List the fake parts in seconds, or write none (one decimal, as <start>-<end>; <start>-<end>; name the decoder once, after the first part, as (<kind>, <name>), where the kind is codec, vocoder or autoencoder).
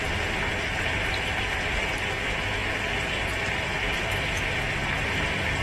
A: none